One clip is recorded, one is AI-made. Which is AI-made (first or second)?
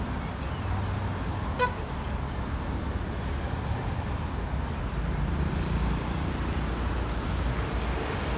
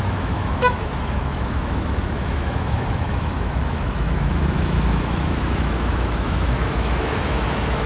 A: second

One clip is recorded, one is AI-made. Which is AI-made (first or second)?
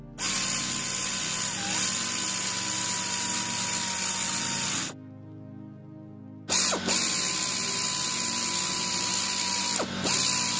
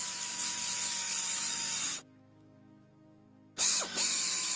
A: second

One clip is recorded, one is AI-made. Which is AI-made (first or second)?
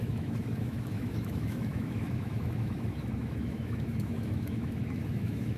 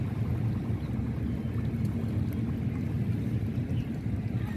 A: first